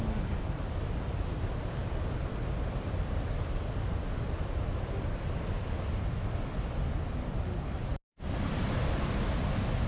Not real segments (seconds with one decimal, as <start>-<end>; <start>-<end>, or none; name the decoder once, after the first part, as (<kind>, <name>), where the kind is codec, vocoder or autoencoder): 2.3-4.3 (vocoder, BigVGAN v2); 7.9-8.6